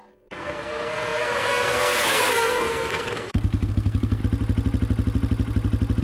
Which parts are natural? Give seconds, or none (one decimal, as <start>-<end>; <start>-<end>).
4.2-6.0